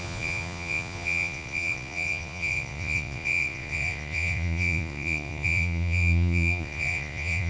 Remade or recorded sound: remade